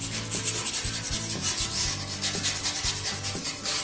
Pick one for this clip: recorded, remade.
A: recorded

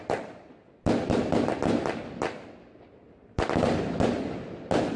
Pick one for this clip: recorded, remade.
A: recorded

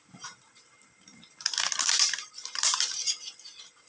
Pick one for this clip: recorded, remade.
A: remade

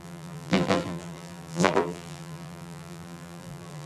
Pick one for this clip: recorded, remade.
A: remade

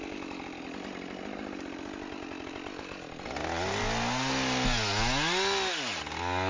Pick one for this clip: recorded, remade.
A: recorded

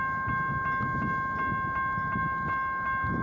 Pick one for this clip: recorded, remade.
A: recorded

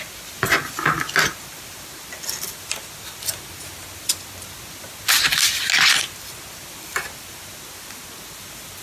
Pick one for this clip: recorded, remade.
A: recorded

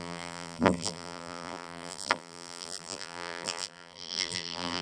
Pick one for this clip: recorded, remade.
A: remade